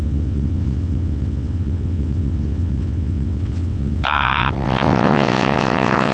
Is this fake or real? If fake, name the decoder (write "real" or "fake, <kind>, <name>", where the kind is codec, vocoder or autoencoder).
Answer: fake, vocoder, WaveNeXt